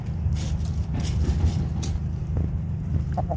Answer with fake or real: fake